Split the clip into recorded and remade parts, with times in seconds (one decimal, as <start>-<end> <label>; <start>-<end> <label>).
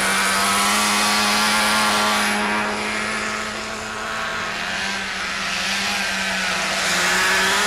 0.0-7.7 recorded